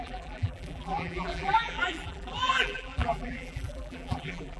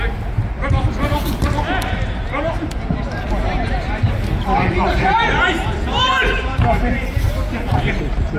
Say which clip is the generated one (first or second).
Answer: first